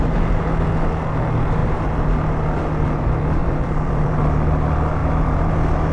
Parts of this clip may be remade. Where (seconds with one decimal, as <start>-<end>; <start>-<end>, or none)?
3.4-4.2; 5.0-5.5